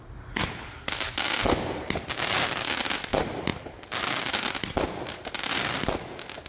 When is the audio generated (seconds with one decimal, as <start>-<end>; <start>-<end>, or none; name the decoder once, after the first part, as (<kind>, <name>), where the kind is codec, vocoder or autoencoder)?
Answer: none